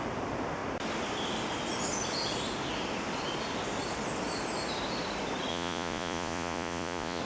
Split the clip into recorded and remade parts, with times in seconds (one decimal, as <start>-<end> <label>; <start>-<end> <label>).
0.0-5.5 recorded; 5.5-7.2 remade